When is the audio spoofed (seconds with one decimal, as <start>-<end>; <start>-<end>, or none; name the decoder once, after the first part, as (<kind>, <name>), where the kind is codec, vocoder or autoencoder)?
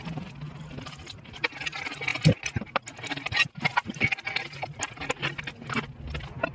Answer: none